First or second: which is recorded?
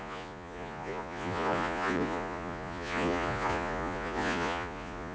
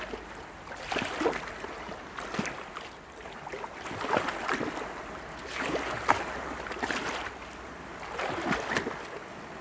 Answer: second